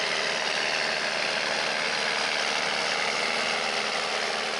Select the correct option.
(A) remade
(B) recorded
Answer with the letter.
B